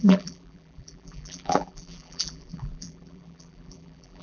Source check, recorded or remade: remade